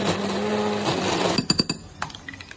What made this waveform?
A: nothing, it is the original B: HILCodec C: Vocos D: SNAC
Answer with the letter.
A